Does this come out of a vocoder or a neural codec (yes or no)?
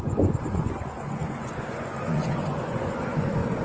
yes